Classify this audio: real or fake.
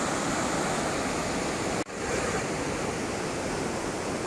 real